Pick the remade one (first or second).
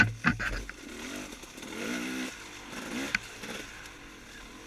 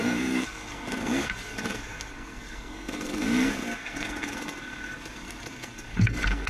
second